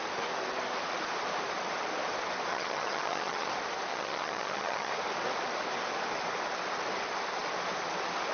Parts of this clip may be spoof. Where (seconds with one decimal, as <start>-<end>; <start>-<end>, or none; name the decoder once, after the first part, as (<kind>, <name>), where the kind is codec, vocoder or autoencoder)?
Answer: 2.5-3.5 (vocoder, HiFi-GAN); 3.9-4.9